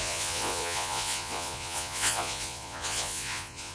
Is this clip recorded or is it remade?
remade